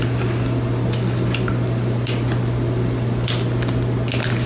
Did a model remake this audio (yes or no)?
no